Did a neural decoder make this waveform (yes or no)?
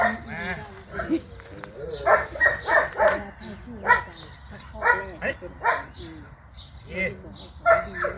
no